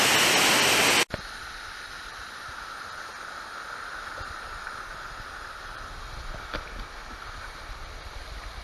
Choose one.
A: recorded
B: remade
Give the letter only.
A